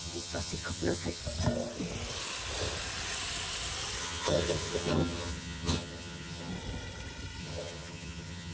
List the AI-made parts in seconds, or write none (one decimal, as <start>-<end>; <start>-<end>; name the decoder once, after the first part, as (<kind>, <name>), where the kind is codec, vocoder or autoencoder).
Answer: 0.0-1.2 (vocoder, HiFi-GAN); 4.0-6.5; 7.4-8.5